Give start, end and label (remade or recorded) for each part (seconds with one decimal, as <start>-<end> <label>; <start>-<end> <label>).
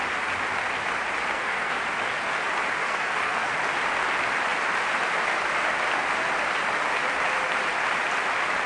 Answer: 0.0-1.3 recorded; 1.3-1.8 remade; 1.8-2.8 recorded; 2.8-3.5 remade; 3.5-8.7 recorded